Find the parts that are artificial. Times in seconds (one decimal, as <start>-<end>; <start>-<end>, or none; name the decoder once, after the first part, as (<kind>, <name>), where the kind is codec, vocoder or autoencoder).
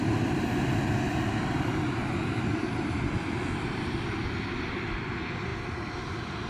none